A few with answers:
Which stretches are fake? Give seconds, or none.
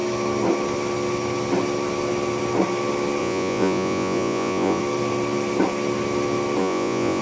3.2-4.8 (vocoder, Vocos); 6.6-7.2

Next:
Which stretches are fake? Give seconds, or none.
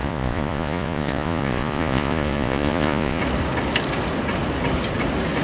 0.0-3.2 (vocoder, Vocos)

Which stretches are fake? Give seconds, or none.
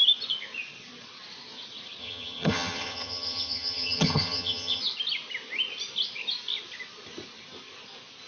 2.0-4.8 (vocoder, HiFi-GAN)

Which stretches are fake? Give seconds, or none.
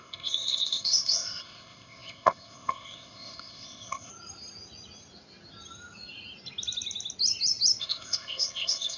0.0-4.1 (codec, ZipCodec); 7.8-9.0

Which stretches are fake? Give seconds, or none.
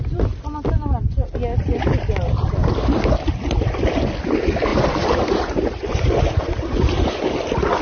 4.7-6.8 (vocoder, BigVGAN v2)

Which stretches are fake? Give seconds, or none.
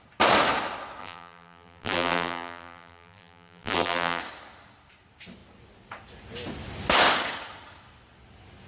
1.0-4.2 (vocoder, BigVGAN v2)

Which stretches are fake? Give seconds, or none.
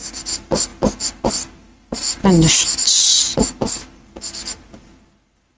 none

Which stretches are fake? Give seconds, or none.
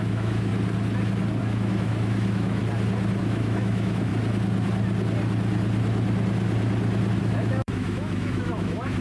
0.0-0.5 (autoencoder, DAC-VAE); 1.4-2.6; 3.2-4.1; 7.2-9.0